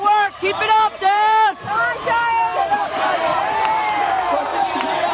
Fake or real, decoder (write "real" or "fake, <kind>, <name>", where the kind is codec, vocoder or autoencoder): fake, vocoder, BigVGAN v2